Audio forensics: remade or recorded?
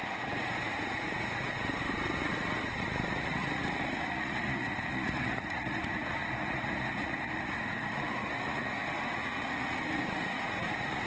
remade